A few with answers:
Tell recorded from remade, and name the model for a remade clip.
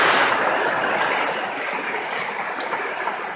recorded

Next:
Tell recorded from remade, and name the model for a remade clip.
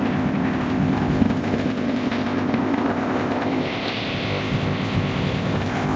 remade, codec, ZipCodec